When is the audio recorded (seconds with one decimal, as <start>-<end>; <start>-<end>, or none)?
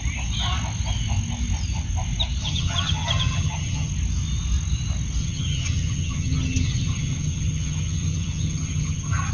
0.0-2.4; 3.9-5.2